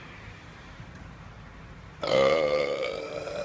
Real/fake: fake